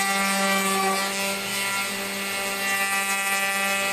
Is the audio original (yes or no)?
yes